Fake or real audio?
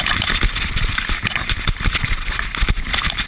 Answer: real